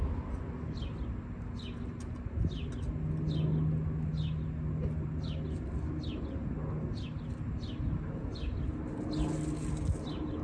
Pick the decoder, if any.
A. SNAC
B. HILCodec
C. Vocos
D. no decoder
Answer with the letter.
D